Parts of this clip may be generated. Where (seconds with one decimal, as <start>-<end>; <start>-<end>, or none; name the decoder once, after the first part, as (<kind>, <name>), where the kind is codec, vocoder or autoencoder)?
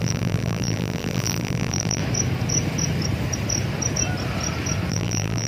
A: 0.0-2.0 (vocoder, BigVGAN v2); 4.9-5.5